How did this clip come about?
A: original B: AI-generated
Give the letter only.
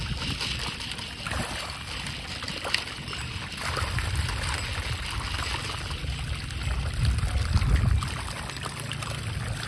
A